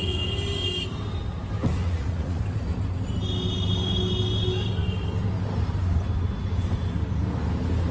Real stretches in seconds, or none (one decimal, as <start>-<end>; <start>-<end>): 0.0-1.8; 2.4-7.9